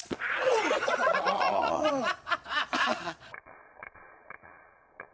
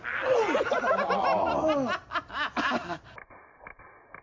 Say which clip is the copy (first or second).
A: first